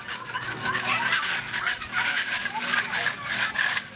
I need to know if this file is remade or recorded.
remade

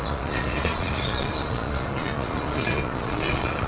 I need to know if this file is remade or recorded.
remade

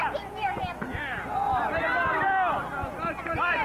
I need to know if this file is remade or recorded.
recorded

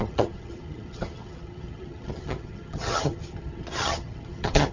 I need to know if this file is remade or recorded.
remade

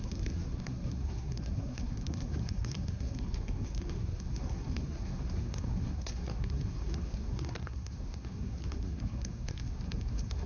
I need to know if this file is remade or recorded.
remade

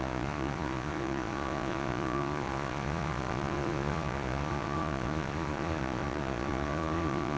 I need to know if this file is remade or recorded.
remade